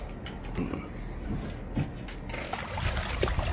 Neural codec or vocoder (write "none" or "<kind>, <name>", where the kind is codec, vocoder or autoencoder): none